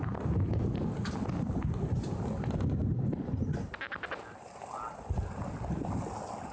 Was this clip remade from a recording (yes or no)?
no